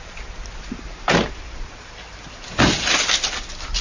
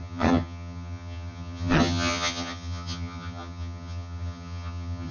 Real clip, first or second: first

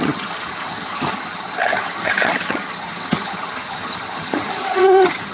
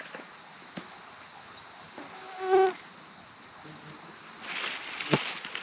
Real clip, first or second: second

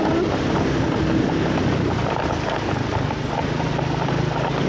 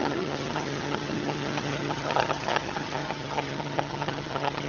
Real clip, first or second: first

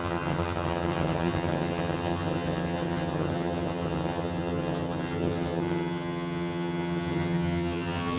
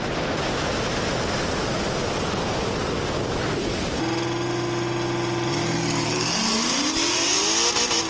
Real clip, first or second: second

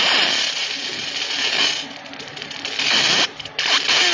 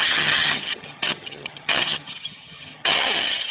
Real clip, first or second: first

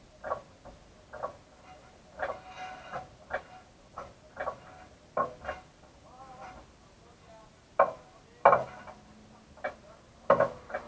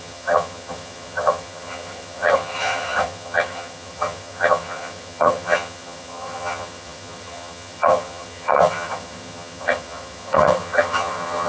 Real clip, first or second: first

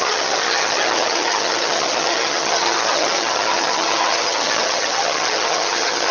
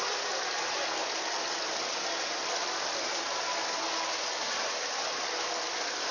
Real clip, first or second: second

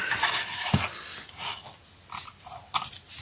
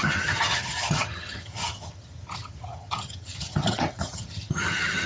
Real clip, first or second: first